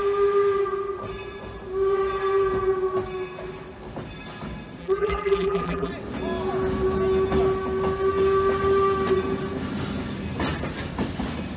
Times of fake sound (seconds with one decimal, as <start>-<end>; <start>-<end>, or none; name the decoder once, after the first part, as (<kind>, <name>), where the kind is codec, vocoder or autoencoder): 4.8-5.9 (vocoder, BigVGAN v2)

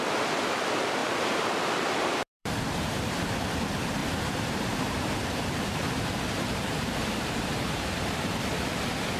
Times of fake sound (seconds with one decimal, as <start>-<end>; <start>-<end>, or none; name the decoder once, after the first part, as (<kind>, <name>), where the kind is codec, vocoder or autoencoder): 1.0-3.5 (vocoder, BigVGAN v2); 4.0-8.4

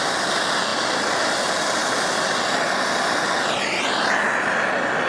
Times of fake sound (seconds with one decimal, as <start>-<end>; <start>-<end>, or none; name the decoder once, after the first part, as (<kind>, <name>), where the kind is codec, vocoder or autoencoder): 1.8-2.9 (vocoder, BigVGAN v2)

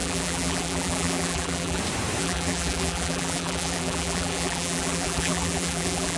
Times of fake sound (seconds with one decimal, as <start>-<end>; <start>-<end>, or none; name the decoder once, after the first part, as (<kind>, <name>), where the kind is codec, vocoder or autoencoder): 0.0-1.8 (vocoder, BigVGAN v2); 2.2-6.2

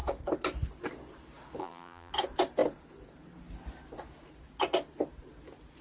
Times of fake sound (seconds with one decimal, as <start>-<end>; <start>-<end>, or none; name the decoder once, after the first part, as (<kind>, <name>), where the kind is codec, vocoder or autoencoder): 1.6-2.1 (vocoder, BigVGAN v2)

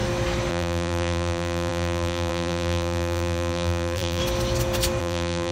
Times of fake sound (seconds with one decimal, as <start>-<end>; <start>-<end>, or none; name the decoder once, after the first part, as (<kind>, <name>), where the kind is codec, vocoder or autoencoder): 0.5-4.2 (vocoder, BigVGAN v2); 5.0-5.5